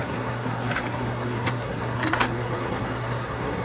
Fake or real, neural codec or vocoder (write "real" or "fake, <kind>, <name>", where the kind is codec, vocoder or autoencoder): fake, codec, SNAC